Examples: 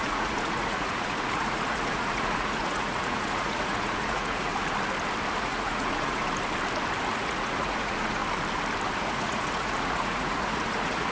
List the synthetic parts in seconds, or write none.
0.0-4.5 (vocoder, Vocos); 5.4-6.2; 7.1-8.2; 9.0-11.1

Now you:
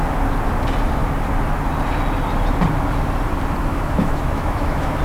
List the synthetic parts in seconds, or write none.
3.7-5.0 (autoencoder, DAC-VAE)